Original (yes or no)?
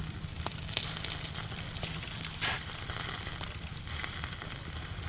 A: yes